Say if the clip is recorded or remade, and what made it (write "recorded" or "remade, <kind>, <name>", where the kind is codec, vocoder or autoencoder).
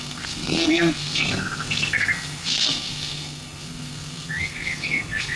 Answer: remade, codec, SNAC